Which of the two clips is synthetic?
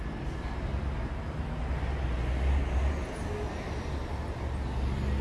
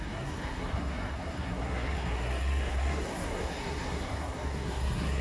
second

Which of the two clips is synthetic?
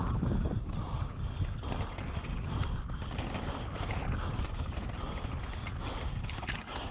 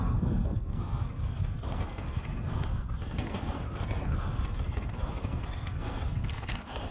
second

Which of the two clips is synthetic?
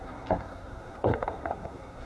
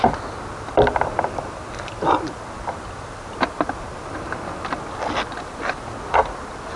first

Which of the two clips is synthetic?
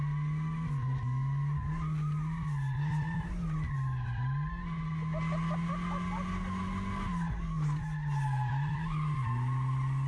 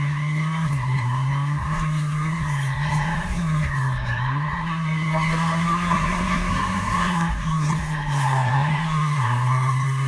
second